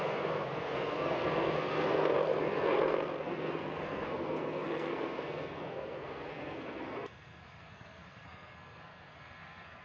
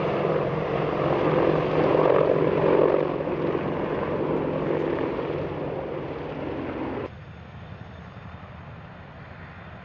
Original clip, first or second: second